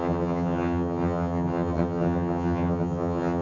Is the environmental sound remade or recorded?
remade